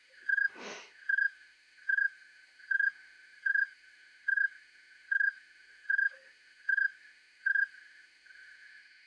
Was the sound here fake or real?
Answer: fake